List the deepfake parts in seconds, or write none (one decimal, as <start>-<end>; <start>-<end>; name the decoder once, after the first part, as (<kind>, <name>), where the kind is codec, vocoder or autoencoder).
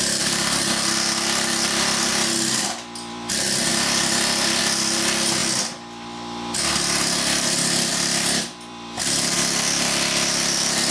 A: 0.0-2.1 (vocoder, BigVGAN v2); 2.6-3.7; 4.6-5.4; 7.9-10.9